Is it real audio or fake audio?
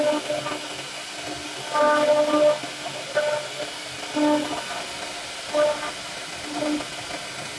real